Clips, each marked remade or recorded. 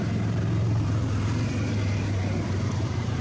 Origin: remade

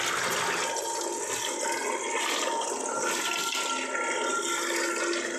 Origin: recorded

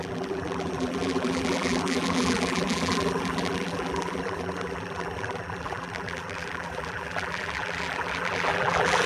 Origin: remade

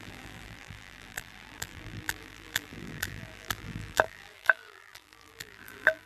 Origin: remade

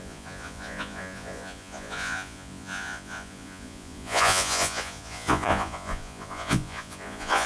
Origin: remade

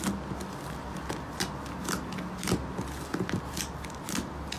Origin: recorded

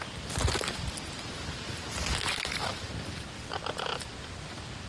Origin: recorded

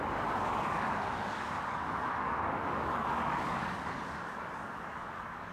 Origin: remade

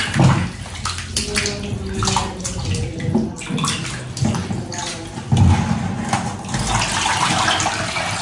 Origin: recorded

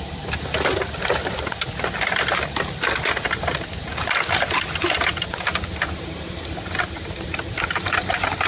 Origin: recorded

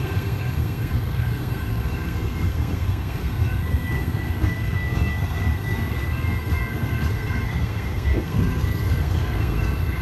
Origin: remade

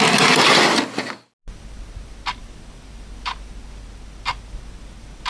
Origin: recorded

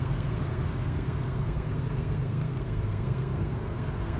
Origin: remade